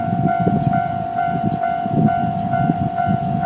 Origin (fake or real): fake